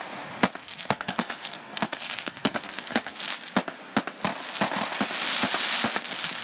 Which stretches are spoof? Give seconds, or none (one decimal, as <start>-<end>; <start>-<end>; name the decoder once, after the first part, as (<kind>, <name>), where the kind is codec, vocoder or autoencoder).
0.6-3.2 (codec, SNAC)